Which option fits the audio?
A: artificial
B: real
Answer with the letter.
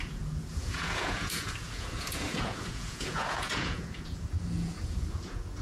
A